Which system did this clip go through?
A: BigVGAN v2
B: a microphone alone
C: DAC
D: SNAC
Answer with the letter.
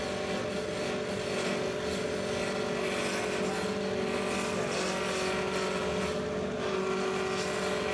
B